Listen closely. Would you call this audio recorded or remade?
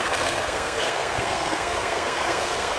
remade